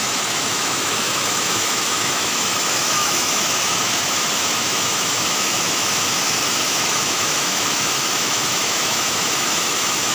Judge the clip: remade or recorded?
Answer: remade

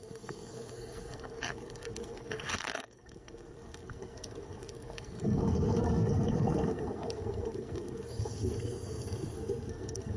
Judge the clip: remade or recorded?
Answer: remade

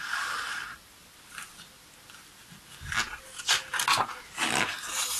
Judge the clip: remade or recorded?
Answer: recorded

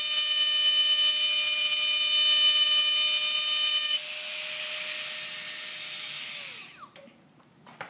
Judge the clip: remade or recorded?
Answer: recorded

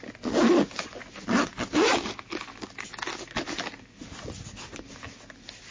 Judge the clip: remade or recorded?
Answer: recorded